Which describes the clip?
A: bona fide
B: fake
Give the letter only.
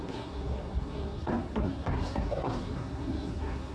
B